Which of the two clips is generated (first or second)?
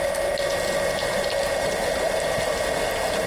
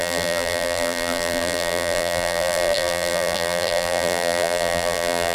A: second